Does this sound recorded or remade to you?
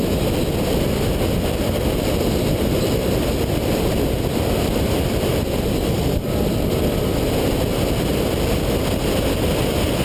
recorded